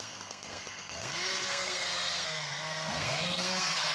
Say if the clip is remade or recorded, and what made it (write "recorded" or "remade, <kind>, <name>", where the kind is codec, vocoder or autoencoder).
remade, codec, SNAC